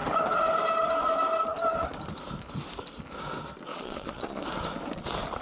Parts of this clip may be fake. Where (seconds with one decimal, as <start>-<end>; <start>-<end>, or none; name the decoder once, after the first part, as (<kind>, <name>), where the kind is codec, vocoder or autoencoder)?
3.7-4.4 (vocoder, Vocos)